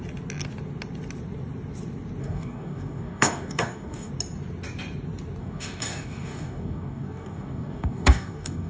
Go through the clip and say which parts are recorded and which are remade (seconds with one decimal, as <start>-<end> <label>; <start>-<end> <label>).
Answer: 0.0-2.2 recorded; 2.2-4.1 remade; 4.1-5.4 recorded; 5.4-8.7 remade